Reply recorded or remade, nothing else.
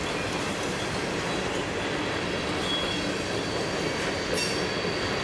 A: recorded